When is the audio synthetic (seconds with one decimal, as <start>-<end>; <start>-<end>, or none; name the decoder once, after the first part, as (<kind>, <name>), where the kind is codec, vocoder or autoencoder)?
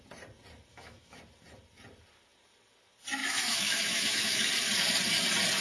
0.7-1.2 (autoencoder, DAC-VAE); 3.2-4.5